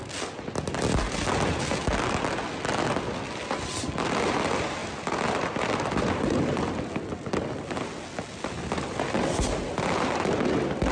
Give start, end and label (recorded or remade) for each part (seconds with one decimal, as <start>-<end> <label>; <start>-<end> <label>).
0.0-10.9 recorded